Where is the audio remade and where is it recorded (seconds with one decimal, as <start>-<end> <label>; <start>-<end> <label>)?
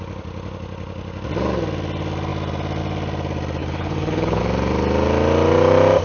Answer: 0.0-3.6 recorded; 3.6-4.4 remade; 4.4-6.0 recorded